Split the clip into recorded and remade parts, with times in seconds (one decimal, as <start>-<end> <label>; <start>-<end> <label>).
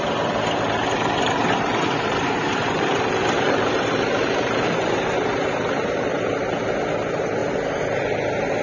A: 0.0-1.4 recorded; 1.4-6.3 remade; 6.3-8.6 recorded